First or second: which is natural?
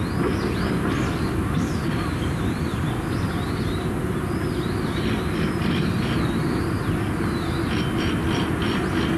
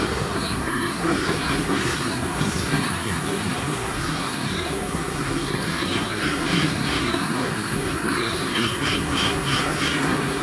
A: first